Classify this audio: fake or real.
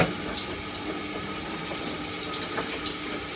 real